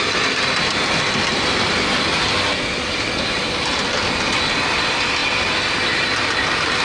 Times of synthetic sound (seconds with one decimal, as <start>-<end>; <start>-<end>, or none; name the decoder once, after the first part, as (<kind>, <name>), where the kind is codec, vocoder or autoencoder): none